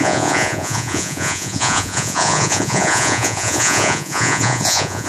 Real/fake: fake